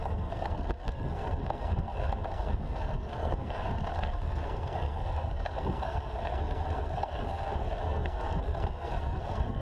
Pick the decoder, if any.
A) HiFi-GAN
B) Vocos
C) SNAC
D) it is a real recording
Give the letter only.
C